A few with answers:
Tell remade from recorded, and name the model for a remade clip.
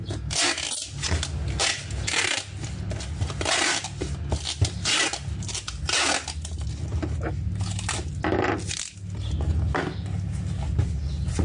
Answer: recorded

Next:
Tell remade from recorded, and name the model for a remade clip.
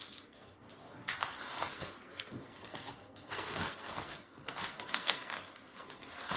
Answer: remade, codec, SNAC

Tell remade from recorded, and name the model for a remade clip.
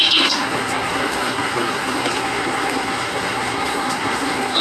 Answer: remade, codec, SNAC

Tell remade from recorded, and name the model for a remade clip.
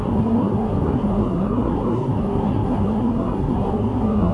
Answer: remade, codec, SNAC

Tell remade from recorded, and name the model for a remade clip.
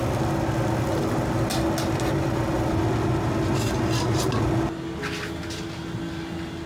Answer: recorded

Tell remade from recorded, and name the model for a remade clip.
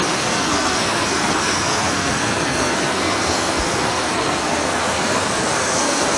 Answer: remade, codec, SNAC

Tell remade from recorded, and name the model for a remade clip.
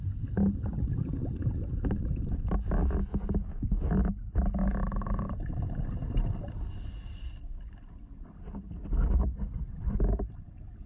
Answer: recorded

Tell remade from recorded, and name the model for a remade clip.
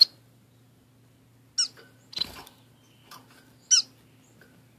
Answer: recorded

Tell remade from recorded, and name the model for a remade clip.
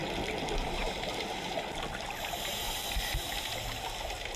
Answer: recorded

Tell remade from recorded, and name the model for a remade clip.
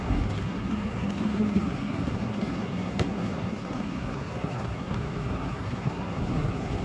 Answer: remade, codec, SNAC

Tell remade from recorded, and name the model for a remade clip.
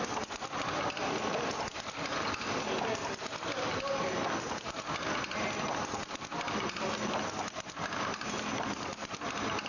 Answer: recorded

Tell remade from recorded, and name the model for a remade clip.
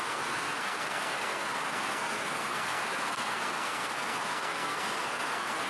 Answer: remade, codec, SNAC